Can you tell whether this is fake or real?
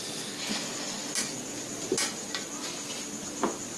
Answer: real